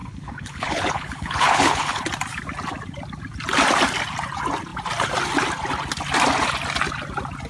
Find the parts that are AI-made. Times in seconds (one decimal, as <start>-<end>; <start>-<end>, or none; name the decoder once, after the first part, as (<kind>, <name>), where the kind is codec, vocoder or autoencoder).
0.0-2.0 (codec, HILCodec)